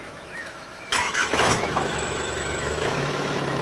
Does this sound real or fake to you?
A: fake